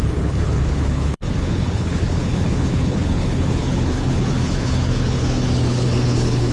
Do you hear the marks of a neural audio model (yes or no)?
yes